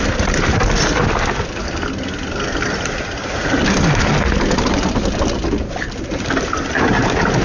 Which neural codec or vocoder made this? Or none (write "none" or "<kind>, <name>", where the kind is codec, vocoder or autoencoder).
none